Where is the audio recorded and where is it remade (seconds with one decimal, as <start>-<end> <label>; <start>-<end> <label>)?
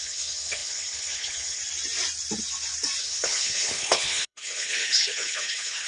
0.0-1.6 remade; 1.6-3.0 recorded; 3.0-5.9 remade